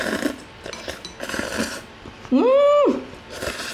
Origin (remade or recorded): recorded